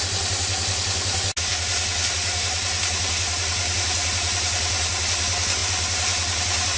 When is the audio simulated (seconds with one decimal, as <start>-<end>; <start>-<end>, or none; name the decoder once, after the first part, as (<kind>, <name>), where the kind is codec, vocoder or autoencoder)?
none